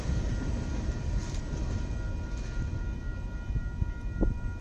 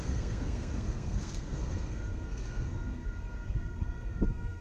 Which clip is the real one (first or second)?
first